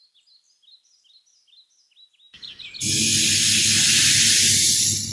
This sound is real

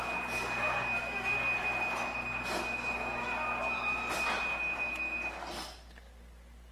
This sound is real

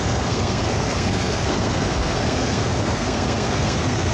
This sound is fake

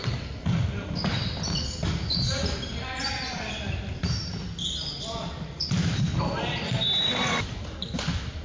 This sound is real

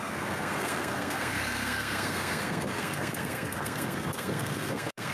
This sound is fake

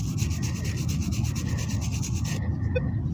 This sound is real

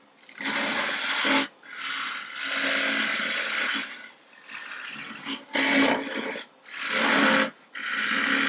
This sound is real